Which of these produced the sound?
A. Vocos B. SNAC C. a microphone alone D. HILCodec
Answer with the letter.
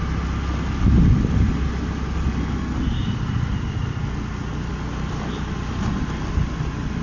C